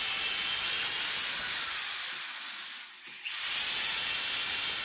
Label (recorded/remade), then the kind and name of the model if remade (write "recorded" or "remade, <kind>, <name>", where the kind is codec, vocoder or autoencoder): recorded